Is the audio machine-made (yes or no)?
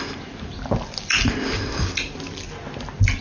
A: no